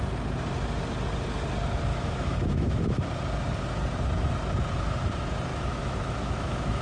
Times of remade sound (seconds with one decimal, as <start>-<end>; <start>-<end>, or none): 1.9-2.9; 5.5-6.8